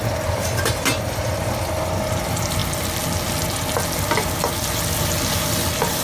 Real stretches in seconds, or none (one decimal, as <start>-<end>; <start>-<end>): 0.0-6.0